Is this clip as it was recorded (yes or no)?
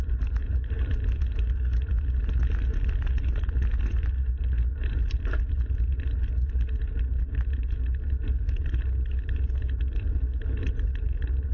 yes